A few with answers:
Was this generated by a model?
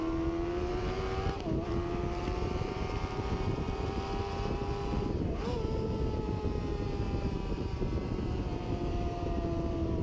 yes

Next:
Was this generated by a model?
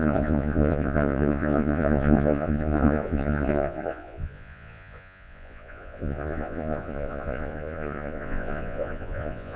yes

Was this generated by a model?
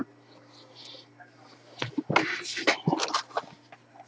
no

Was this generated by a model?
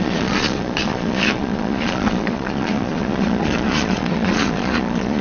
yes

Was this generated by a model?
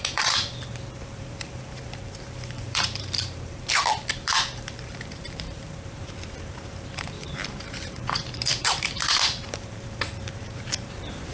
yes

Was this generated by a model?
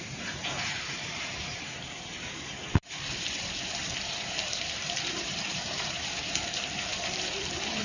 yes